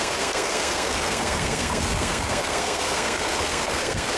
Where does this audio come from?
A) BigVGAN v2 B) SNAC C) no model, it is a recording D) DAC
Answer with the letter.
B